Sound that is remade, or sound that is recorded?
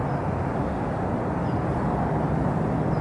recorded